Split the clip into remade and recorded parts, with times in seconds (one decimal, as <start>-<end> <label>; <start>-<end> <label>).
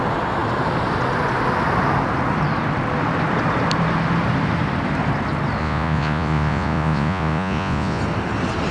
0.0-5.6 recorded; 5.6-8.0 remade; 8.0-8.7 recorded